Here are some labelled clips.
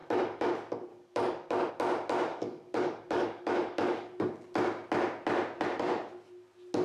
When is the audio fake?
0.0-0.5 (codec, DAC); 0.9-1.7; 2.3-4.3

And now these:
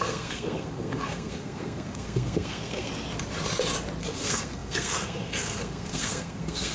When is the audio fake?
0.0-2.9 (codec, SNAC); 4.0-6.7

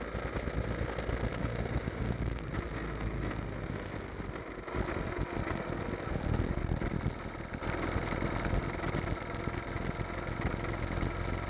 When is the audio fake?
1.3-2.5 (codec, DAC)

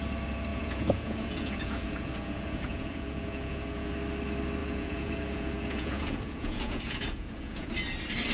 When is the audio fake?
0.5-3.9 (vocoder, Vocos); 4.6-7.7

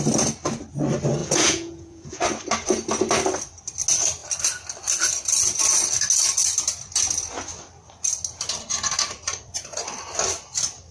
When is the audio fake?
1.2-2.2 (vocoder, Vocos)